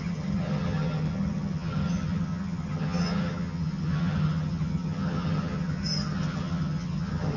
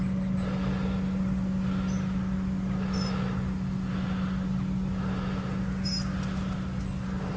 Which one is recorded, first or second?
second